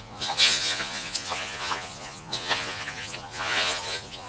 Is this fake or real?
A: fake